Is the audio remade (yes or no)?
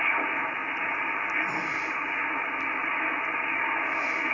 no